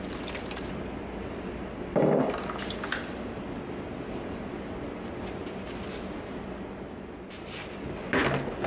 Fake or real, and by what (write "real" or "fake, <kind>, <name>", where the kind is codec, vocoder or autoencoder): real